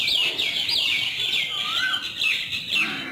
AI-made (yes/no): no